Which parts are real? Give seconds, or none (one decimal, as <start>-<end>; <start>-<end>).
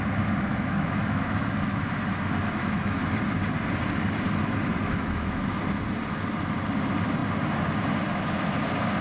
0.0-0.5; 1.8-2.6; 3.2-4.8; 5.4-9.0